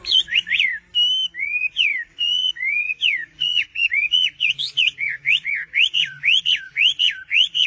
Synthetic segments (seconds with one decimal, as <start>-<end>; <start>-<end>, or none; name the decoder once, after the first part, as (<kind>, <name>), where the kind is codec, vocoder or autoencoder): 0.0-0.7 (vocoder, Vocos); 1.4-7.7